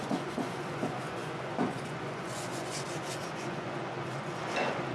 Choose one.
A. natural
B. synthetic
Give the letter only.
B